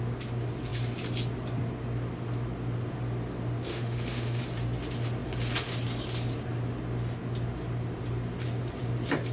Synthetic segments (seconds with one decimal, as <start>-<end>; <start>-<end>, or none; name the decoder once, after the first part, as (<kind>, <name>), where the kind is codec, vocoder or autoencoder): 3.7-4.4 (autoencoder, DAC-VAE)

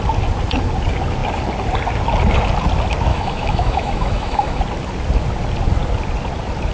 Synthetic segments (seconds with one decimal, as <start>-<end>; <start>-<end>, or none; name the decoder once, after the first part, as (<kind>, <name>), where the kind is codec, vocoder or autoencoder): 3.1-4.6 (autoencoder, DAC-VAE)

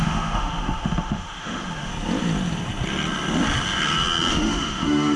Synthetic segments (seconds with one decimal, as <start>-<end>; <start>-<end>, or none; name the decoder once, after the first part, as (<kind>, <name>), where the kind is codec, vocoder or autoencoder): 0.0-1.9 (autoencoder, DAC-VAE); 4.3-5.2

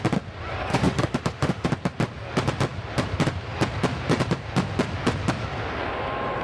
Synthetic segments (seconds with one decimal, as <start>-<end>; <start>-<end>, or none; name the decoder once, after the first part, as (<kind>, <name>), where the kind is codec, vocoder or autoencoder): 0.7-1.7 (autoencoder, DAC-VAE)